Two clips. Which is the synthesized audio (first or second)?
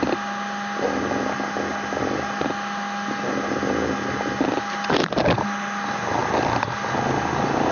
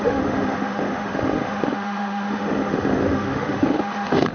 second